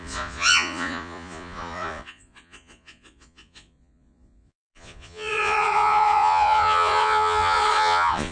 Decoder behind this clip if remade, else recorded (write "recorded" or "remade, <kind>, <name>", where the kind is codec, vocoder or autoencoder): remade, vocoder, Vocos